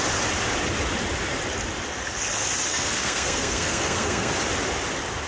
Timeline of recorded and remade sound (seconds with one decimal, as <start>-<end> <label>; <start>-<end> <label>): 0.0-2.7 recorded; 2.7-4.3 remade; 4.3-5.3 recorded